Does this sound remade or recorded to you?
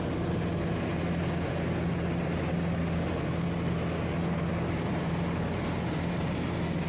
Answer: recorded